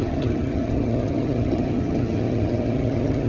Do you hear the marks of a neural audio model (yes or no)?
yes